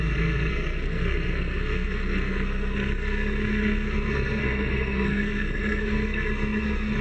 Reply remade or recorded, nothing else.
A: remade